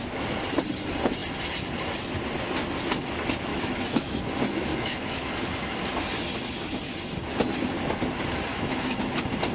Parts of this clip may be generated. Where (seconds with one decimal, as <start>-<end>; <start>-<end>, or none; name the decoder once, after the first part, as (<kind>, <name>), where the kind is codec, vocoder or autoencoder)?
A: 3.5-4.2 (autoencoder, DAC-VAE); 4.7-5.3; 8.5-9.0